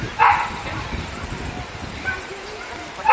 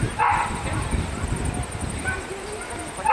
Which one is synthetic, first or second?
first